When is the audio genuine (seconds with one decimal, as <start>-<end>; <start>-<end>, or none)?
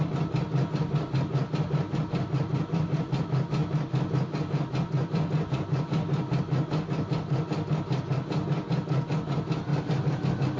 0.0-10.6